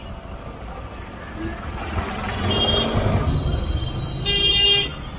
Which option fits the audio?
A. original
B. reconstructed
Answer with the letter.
A